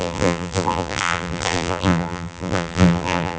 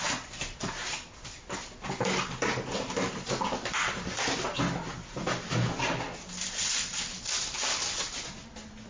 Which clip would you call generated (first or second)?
first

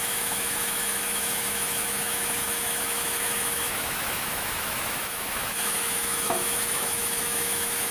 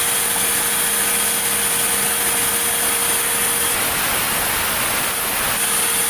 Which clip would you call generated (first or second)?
first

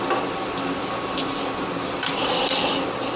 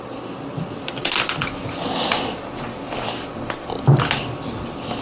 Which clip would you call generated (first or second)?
first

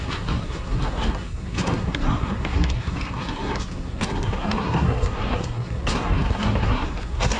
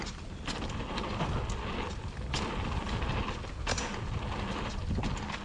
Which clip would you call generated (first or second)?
first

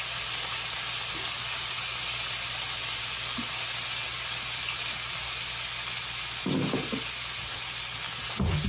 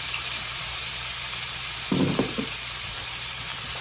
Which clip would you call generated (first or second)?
second